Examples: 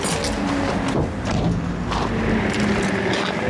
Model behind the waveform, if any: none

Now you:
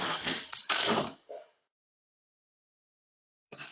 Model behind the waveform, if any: codec, DAC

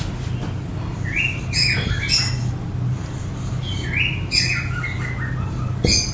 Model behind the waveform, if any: none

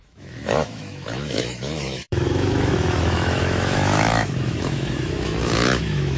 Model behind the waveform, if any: autoencoder, DAC-VAE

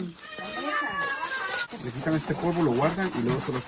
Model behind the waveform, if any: none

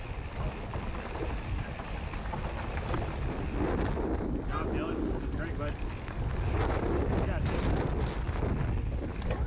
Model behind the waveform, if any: none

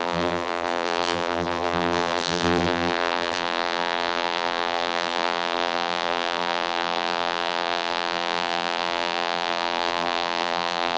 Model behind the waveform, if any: vocoder, BigVGAN v2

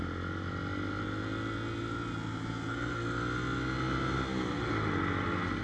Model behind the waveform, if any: none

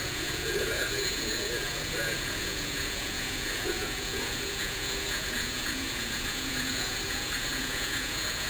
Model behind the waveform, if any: vocoder, Vocos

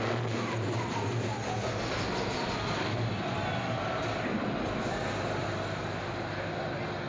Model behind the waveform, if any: none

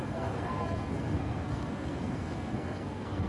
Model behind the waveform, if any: codec, SNAC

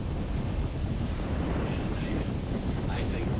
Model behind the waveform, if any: vocoder, BigVGAN v2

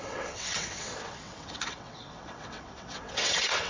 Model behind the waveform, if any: vocoder, WaveNeXt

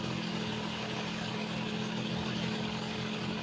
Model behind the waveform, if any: codec, DAC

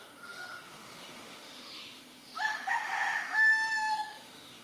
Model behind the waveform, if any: autoencoder, DAC-VAE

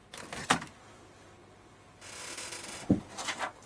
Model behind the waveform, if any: none